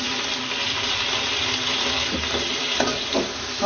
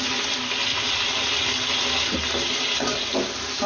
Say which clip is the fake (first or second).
first